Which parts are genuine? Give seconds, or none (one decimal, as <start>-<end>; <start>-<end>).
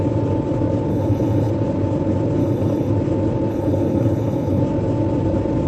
0.0-0.9; 1.5-2.4; 2.9-3.5; 4.6-5.7